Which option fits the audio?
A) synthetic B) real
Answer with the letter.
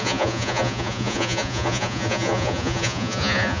A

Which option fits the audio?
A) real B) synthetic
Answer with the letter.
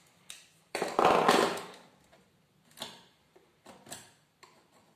B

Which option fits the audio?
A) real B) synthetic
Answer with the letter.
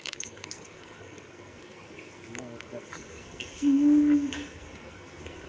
B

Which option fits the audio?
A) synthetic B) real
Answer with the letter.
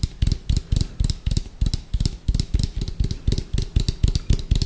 B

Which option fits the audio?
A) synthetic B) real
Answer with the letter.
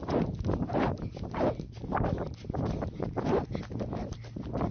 B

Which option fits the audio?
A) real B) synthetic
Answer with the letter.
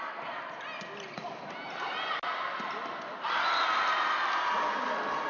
A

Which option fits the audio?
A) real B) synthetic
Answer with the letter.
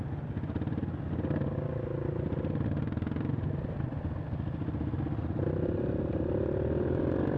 A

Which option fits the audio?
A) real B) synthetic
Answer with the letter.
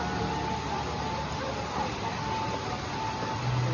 A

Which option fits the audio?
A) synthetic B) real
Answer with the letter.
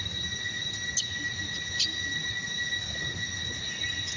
B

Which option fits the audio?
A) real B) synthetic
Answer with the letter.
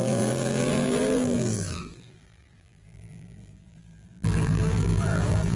B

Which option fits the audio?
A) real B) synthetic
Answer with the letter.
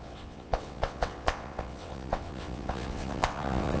B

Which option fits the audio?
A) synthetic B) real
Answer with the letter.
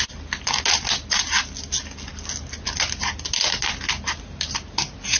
B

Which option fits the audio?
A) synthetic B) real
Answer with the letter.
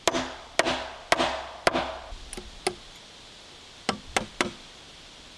B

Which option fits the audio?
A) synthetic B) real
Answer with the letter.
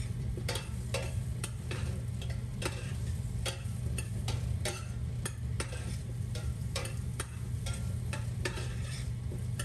A